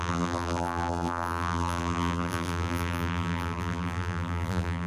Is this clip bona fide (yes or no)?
no